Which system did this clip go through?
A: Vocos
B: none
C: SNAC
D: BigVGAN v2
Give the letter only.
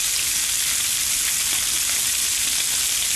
B